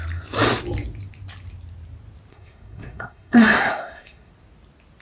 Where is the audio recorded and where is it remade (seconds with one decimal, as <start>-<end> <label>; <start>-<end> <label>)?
0.0-2.3 recorded; 2.3-4.3 remade; 4.3-5.0 recorded